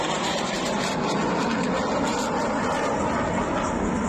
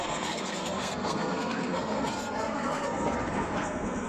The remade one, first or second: second